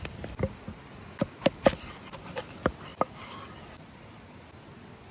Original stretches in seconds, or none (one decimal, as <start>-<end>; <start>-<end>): 0.0-5.1